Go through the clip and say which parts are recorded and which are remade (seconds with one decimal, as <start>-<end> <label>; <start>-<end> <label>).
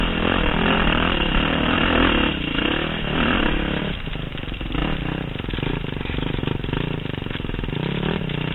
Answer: 0.0-1.8 remade; 1.8-3.8 recorded; 3.8-4.8 remade; 4.8-5.7 recorded; 5.7-8.5 remade